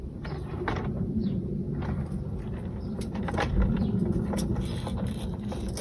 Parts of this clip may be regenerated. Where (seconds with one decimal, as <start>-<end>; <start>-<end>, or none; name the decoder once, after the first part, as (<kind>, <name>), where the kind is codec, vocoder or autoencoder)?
0.0-1.2 (vocoder, BigVGAN v2); 3.0-5.8

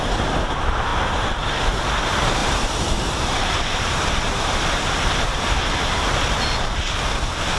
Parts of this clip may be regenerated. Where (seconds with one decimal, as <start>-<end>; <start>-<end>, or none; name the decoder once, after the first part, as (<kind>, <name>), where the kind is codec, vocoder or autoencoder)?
2.4-5.6 (vocoder, BigVGAN v2)

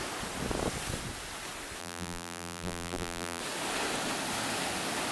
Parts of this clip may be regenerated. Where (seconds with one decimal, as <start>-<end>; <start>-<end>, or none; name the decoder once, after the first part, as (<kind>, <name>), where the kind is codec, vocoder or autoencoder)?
1.8-3.4 (vocoder, BigVGAN v2)